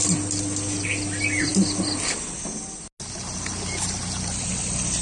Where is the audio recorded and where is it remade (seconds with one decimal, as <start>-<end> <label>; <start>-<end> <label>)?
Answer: 0.0-5.0 recorded